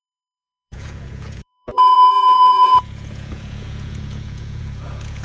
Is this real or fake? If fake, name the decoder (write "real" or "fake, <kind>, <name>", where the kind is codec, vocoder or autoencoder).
fake, vocoder, Vocos